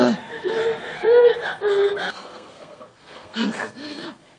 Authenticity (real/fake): fake